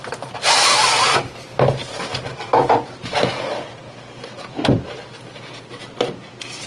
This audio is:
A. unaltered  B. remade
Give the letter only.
B